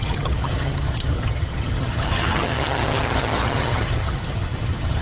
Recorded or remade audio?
remade